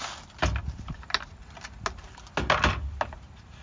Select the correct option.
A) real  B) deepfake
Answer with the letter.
A